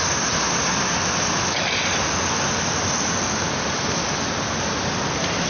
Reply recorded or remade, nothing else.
recorded